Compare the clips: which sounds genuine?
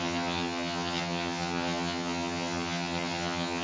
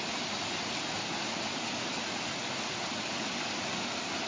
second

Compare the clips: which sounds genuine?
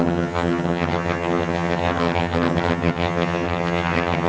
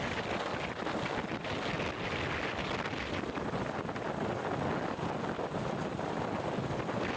second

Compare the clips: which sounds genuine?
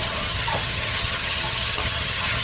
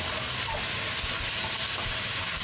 second